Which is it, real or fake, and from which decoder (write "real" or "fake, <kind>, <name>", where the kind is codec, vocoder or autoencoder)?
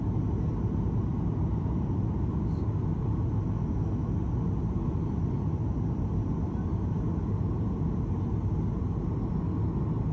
real